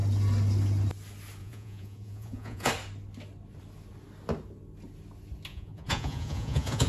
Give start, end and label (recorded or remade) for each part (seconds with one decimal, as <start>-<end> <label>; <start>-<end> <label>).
0.0-1.4 recorded; 1.4-2.7 remade; 2.7-5.5 recorded; 5.5-6.9 remade